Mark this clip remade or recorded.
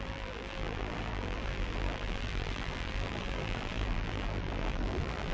remade